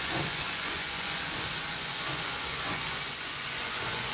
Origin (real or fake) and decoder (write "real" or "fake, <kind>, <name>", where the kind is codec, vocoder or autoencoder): fake, vocoder, Vocos